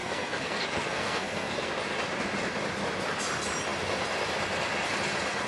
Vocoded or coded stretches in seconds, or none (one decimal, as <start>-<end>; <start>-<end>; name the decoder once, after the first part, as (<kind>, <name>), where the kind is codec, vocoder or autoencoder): 0.0-1.7 (codec, SNAC)